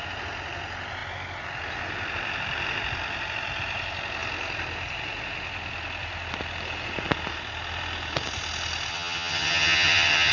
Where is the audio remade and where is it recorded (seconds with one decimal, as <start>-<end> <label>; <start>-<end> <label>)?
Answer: 0.0-8.9 recorded; 8.9-10.3 remade